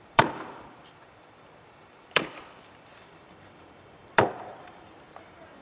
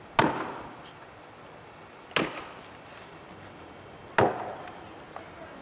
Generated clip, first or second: first